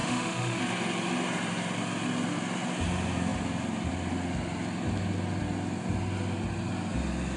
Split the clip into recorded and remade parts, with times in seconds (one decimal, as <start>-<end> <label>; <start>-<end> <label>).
0.0-0.6 remade; 0.6-7.4 recorded